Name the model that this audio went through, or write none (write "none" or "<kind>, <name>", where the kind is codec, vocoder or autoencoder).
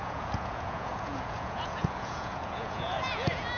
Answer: vocoder, Vocos